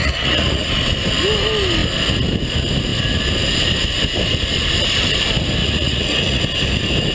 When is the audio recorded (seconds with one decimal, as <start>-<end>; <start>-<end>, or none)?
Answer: 0.7-5.6; 6.4-7.1